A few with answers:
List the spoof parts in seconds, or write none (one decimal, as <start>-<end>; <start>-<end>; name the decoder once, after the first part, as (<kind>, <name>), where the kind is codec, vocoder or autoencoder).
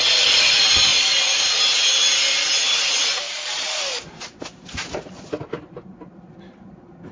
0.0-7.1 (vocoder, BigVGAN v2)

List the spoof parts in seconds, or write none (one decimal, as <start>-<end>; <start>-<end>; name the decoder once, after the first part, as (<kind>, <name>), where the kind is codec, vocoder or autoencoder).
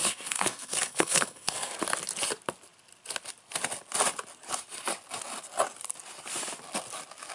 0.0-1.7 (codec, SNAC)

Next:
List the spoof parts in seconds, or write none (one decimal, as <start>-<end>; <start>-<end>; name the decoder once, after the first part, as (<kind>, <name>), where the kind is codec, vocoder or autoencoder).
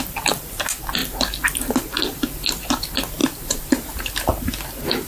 3.2-4.4 (vocoder, BigVGAN v2)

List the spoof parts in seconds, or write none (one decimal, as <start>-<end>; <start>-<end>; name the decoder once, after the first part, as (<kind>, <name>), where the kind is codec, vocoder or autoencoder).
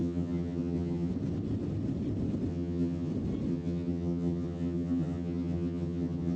0.0-1.1 (vocoder, HiFi-GAN); 2.5-3.1; 3.5-6.4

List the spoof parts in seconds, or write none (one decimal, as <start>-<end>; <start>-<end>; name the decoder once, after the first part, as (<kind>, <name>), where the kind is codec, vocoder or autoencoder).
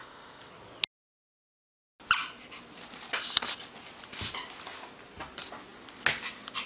0.0-0.5 (codec, ZipCodec)